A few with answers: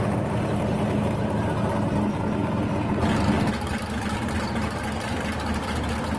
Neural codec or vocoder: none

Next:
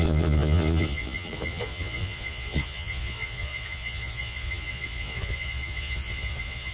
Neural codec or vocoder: vocoder, Vocos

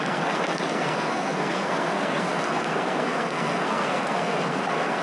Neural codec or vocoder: codec, SNAC